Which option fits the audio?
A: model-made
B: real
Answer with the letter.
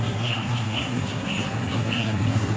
A